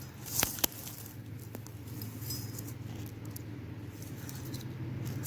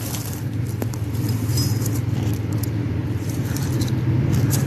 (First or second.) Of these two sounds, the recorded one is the first